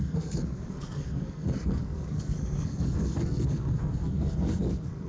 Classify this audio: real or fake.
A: fake